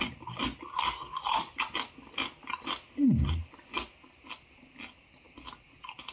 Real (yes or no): yes